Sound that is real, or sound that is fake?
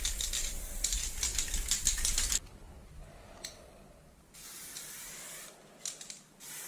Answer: real